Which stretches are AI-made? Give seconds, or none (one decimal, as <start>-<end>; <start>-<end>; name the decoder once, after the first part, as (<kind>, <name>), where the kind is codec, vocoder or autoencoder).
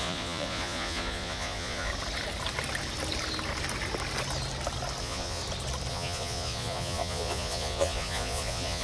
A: 0.0-1.9 (vocoder, Vocos); 5.0-5.4; 5.9-8.8